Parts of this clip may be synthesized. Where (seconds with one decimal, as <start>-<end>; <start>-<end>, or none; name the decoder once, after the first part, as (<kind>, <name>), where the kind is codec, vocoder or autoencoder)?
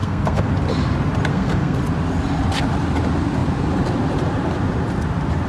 0.0-0.5 (codec, SNAC); 1.3-1.8